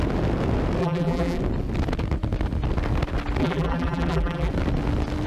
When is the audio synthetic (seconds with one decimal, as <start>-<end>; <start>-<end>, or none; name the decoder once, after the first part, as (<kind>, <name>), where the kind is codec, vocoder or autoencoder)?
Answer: 0.8-1.4 (vocoder, BigVGAN v2); 3.4-4.5